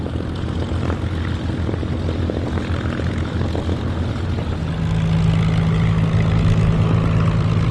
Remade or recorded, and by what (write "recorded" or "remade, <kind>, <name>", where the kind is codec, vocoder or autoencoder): recorded